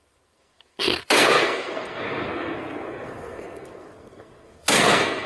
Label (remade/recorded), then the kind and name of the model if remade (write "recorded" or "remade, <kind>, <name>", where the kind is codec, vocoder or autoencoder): remade, codec, SNAC